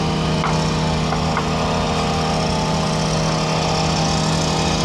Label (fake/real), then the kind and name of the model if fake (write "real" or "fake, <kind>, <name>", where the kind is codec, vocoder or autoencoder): real